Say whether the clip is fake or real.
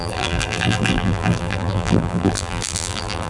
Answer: fake